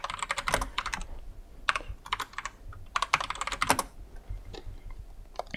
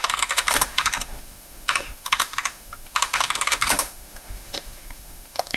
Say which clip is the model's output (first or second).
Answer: second